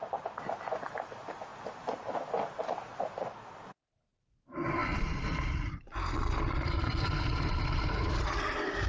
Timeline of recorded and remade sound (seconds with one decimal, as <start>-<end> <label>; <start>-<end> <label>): 0.0-8.9 recorded